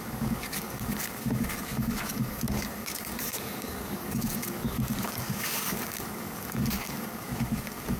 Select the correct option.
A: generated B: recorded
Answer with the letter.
A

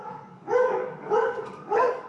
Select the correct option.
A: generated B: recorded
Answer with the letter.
A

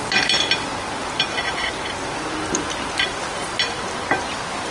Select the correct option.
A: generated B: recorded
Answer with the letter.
B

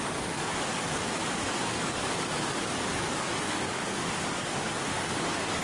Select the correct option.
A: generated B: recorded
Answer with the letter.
A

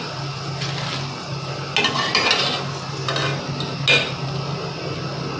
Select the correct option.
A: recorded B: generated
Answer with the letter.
A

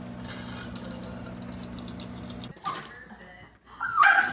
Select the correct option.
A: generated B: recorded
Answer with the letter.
B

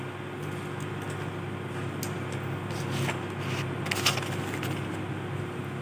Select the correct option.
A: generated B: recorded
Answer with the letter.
B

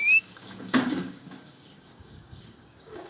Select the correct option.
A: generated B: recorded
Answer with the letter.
A